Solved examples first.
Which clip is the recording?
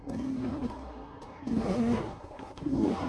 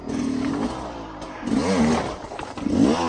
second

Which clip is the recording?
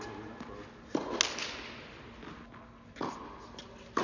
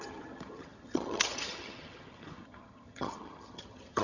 first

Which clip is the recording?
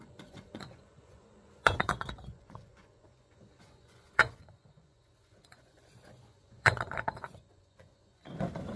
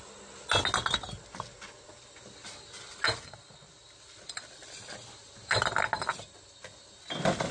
second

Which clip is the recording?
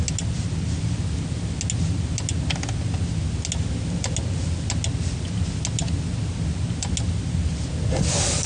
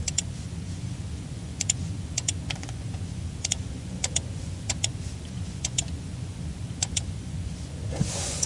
first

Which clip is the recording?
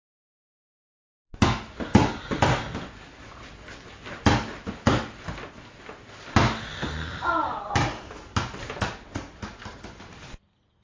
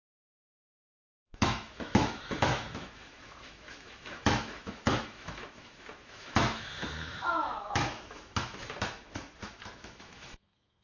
first